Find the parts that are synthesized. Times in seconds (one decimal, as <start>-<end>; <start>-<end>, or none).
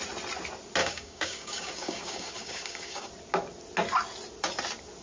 0.8-3.1